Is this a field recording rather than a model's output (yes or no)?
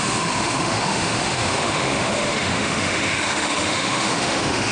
no